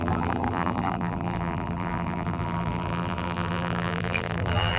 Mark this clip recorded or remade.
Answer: remade